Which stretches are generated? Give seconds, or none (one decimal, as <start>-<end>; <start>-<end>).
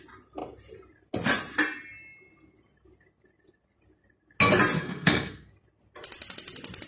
4.8-5.5